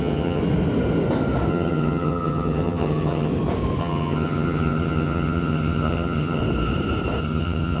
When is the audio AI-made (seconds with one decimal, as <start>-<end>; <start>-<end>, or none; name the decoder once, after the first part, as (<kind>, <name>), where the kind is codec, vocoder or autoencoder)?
0.0-0.4 (vocoder, HiFi-GAN); 1.5-3.3; 3.8-6.4; 7.2-7.8